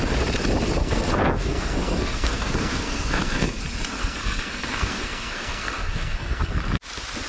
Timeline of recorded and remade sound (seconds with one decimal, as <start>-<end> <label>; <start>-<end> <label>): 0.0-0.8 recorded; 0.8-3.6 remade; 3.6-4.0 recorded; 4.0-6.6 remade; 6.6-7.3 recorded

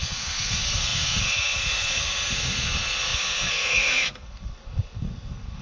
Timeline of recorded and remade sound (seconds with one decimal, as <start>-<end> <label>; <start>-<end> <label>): 0.0-5.6 remade

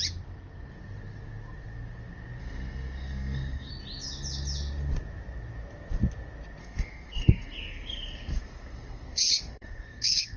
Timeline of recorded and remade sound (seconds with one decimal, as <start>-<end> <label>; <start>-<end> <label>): 0.0-2.4 recorded; 2.4-3.7 remade; 3.7-6.6 recorded; 6.6-10.4 remade